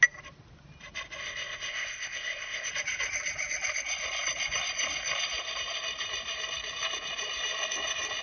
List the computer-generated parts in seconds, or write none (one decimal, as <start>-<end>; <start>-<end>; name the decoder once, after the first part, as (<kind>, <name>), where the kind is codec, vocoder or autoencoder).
1.2-2.7 (codec, ZipCodec)